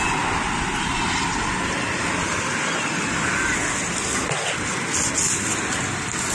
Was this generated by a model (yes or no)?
no